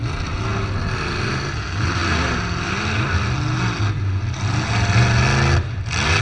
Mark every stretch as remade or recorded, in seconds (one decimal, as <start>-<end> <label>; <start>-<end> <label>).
0.0-6.2 recorded